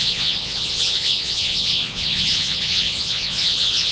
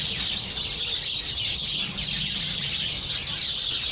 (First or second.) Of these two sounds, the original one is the second